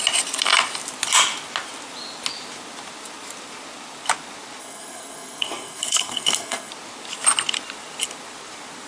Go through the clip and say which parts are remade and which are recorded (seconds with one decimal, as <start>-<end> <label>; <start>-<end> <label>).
0.0-4.6 recorded; 4.6-6.7 remade; 6.7-8.9 recorded